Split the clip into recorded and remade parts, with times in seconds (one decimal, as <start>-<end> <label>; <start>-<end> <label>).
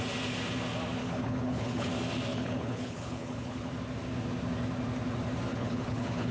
0.0-1.0 recorded; 1.0-1.9 remade; 1.9-2.3 recorded; 2.3-3.7 remade; 3.7-5.5 recorded; 5.5-6.3 remade